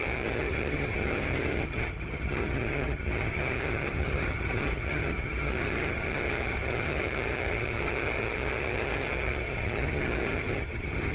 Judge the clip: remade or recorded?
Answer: remade